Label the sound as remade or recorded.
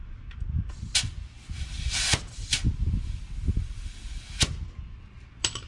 recorded